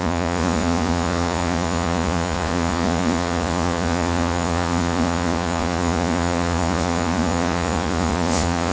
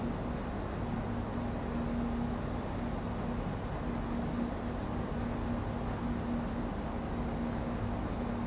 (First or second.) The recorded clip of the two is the second